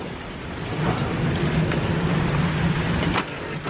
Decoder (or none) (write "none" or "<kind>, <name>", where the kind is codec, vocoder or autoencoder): none